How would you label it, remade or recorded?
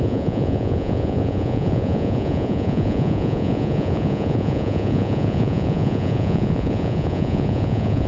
remade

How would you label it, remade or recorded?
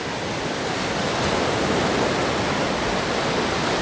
recorded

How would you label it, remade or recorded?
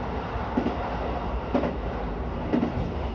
recorded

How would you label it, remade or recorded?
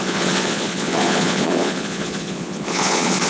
remade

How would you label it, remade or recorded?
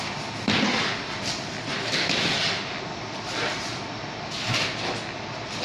recorded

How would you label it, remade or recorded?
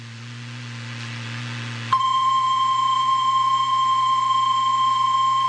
remade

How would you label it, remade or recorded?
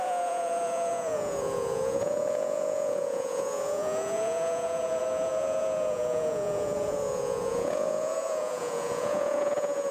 remade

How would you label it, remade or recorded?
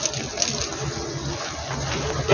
recorded